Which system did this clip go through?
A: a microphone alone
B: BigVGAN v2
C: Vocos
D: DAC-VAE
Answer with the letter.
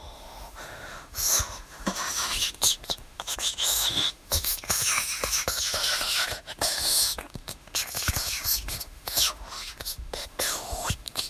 D